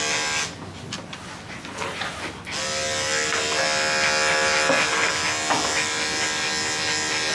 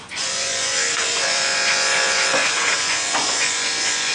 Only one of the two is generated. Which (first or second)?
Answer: second